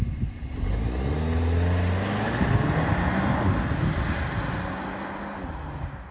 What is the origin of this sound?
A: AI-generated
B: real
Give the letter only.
B